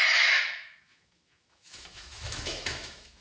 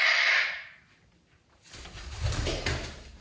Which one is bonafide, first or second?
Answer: second